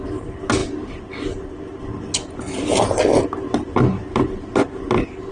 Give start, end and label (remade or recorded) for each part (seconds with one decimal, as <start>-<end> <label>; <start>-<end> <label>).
0.0-5.3 recorded